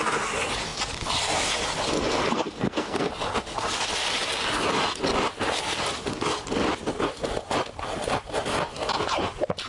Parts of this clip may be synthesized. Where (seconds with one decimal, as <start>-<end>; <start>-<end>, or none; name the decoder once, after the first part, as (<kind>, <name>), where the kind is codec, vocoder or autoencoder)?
2.2-3.1 (codec, SNAC)